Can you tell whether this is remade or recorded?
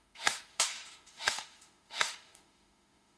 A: remade